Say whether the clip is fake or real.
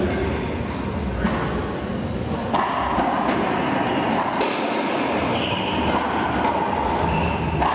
real